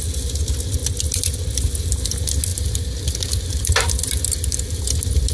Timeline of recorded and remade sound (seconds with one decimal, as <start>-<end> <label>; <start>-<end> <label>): 0.0-5.3 recorded